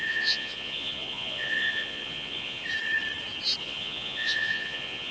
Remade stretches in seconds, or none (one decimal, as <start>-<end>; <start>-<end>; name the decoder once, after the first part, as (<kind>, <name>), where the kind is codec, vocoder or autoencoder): 0.0-2.6 (vocoder, Vocos); 3.6-5.1